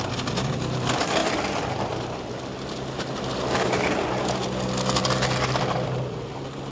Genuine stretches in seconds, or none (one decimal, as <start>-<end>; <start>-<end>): 0.0-6.7